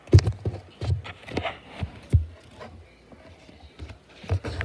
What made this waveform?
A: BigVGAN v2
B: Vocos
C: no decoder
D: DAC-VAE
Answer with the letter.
C